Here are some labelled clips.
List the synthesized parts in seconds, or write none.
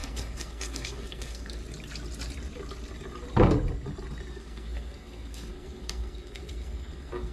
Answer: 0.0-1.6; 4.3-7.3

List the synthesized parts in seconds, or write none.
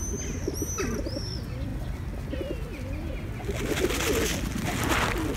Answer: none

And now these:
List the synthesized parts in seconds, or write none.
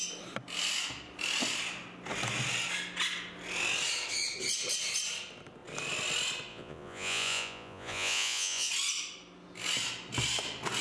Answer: 6.5-8.7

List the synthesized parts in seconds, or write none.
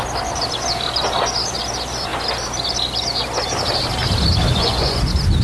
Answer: 4.5-5.0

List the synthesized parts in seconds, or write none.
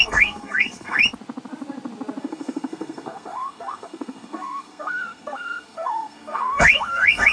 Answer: 0.0-1.0; 2.2-7.3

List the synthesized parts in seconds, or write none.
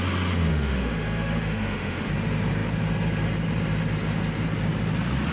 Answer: 0.5-2.1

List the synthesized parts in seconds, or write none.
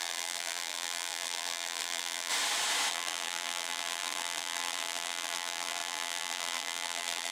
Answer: 0.0-2.3; 2.9-7.3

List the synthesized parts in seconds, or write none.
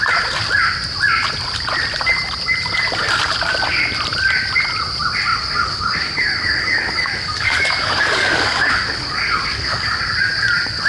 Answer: 5.3-10.0